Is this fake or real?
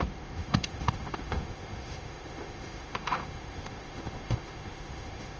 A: fake